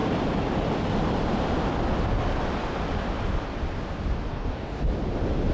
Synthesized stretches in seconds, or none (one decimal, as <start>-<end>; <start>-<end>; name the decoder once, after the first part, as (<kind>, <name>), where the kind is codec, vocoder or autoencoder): 4.3-4.8 (codec, DAC)